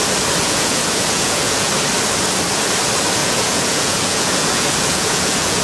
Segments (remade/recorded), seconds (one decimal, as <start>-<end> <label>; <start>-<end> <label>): 0.0-0.4 recorded; 0.4-1.7 remade; 1.7-3.2 recorded; 3.2-5.6 remade